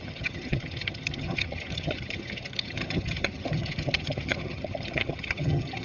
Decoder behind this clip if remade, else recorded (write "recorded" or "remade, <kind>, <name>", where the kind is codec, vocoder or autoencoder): remade, vocoder, HiFi-GAN